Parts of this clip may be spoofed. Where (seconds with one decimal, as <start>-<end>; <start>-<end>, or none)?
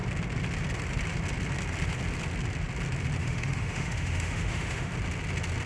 3.2-4.9